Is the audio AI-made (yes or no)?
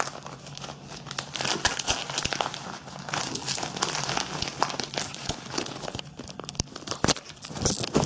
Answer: no